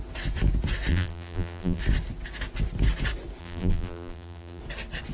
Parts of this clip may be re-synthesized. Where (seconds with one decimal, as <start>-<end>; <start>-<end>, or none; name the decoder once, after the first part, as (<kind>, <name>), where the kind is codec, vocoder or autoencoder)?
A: 0.9-1.8 (vocoder, BigVGAN v2); 3.4-4.6